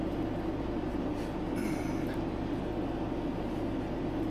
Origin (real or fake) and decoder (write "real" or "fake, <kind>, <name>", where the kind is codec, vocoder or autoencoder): real